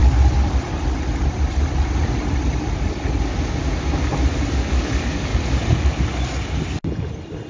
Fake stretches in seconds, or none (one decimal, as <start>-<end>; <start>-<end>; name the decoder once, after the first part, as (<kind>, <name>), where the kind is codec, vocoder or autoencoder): 4.5-5.3 (codec, DAC)